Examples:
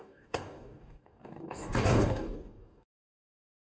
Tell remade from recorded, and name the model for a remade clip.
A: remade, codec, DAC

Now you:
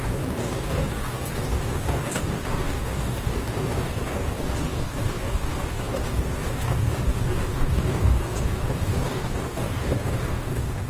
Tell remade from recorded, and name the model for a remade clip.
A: remade, codec, DAC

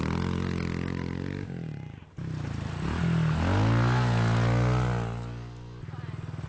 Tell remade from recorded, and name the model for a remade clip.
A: recorded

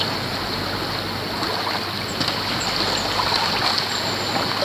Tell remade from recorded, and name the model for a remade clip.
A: recorded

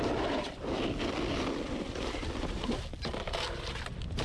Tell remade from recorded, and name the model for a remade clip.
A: recorded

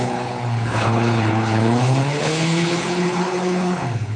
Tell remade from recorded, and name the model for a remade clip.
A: remade, codec, HILCodec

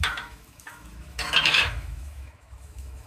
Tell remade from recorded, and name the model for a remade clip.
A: remade, autoencoder, DAC-VAE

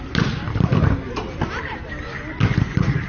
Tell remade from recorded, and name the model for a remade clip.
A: recorded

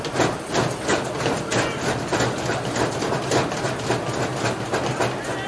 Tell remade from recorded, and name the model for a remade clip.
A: recorded